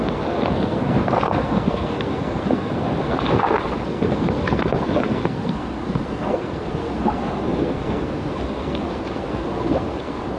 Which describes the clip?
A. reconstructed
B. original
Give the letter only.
A